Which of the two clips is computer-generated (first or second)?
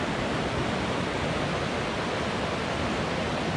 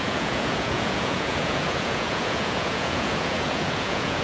second